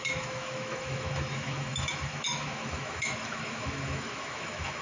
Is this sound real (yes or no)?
no